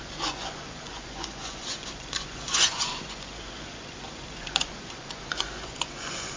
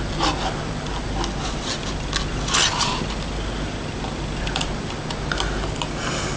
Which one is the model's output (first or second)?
first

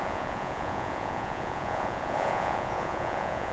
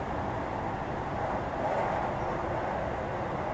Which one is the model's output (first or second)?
first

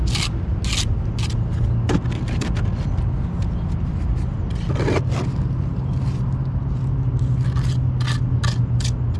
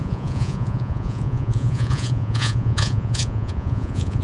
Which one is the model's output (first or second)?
second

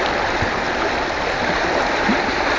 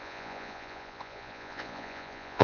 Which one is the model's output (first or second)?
second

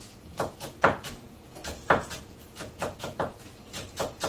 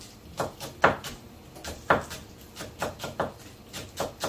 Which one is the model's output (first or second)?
first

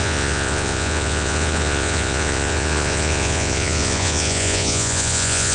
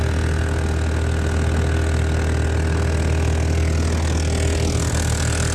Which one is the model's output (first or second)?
first